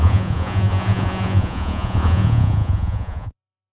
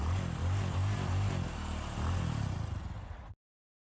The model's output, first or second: first